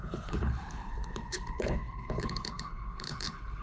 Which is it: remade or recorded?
remade